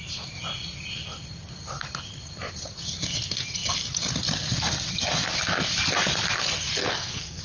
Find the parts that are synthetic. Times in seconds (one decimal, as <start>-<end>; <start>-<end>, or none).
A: 6.8-7.4